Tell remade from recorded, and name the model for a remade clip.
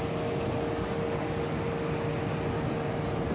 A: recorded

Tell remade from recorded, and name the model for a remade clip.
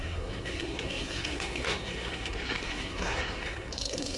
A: remade, codec, SNAC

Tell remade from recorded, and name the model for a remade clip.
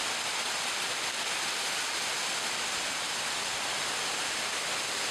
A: recorded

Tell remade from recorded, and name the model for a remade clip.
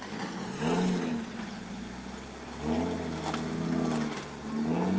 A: recorded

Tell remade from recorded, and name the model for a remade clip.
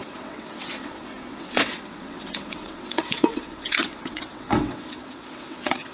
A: remade, vocoder, WaveNeXt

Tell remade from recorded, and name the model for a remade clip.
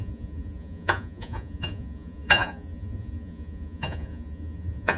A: remade, vocoder, Vocos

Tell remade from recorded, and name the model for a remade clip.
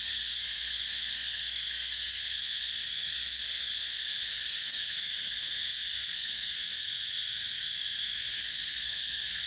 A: remade, codec, SNAC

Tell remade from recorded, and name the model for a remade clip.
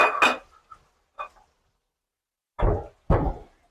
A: recorded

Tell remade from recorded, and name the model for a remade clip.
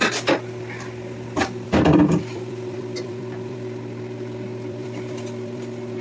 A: remade, vocoder, BigVGAN v2